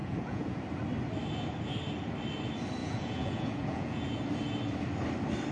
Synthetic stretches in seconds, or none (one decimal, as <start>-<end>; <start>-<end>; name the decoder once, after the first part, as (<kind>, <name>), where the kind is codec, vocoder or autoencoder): 0.0-0.6 (vocoder, Vocos); 2.8-4.2